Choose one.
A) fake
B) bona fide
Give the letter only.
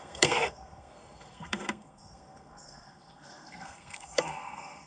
A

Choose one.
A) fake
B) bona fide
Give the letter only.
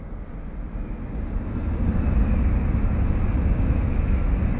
B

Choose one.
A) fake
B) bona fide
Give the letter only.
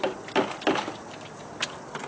B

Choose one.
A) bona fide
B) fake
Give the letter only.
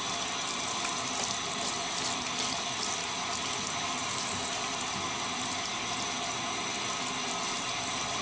A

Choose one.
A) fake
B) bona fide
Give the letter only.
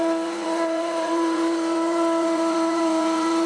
A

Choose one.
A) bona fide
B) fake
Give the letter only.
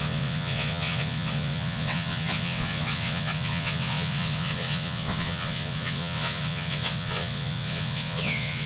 B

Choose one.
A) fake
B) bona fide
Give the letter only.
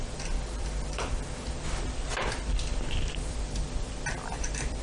A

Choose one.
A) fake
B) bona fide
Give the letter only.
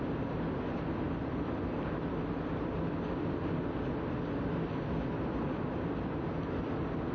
B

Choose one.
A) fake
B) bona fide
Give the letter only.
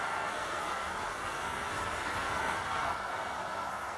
A